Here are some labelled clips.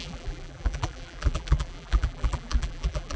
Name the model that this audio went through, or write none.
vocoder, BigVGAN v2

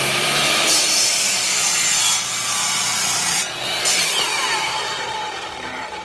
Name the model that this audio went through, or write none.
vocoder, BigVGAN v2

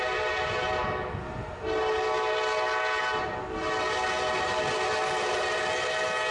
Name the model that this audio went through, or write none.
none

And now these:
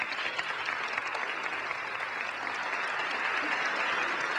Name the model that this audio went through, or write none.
none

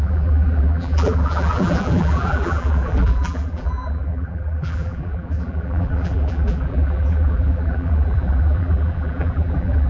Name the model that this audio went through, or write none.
vocoder, BigVGAN v2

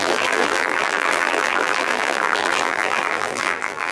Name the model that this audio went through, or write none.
vocoder, BigVGAN v2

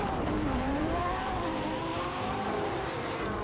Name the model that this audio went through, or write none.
vocoder, BigVGAN v2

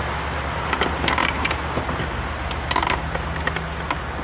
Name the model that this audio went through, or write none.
none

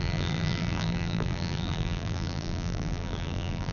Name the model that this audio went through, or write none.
vocoder, BigVGAN v2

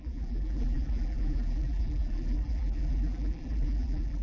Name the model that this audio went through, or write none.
vocoder, BigVGAN v2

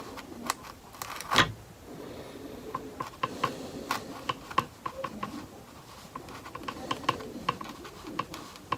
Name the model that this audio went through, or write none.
none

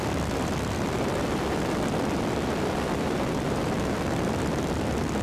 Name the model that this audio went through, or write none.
vocoder, BigVGAN v2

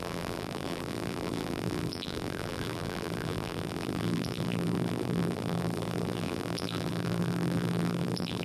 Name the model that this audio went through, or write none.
vocoder, BigVGAN v2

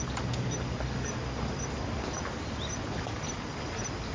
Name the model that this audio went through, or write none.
none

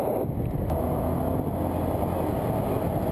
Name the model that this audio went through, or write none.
none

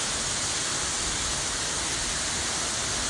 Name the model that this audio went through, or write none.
none